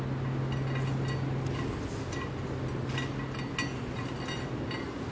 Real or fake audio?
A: real